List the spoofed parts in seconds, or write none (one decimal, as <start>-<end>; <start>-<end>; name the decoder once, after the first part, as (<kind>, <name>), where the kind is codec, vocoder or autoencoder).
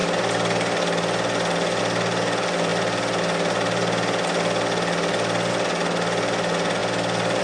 none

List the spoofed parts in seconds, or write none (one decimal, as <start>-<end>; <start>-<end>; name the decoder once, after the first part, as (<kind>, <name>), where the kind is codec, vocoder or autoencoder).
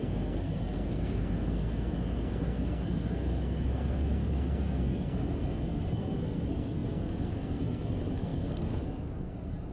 0.0-9.7 (codec, SNAC)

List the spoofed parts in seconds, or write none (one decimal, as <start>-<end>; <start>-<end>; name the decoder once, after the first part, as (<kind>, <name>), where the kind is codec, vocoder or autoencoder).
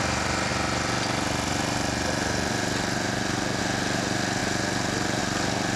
none